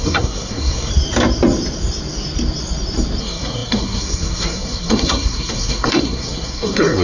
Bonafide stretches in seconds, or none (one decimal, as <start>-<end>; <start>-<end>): 0.9-3.2